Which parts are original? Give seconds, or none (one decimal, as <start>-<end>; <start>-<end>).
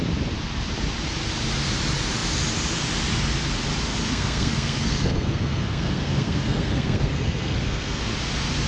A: 0.0-3.9; 8.0-8.7